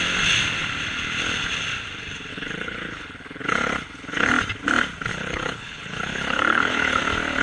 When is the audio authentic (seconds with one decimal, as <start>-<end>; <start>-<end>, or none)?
0.0-2.3; 4.3-5.1; 7.0-7.4